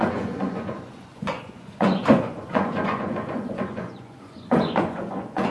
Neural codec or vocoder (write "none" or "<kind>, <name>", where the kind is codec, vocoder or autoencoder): vocoder, Vocos